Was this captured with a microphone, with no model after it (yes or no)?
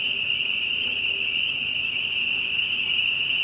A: yes